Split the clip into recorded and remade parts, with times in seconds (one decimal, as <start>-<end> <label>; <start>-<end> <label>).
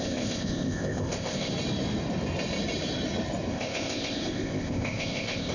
0.0-1.5 remade; 1.5-3.5 recorded; 3.5-5.5 remade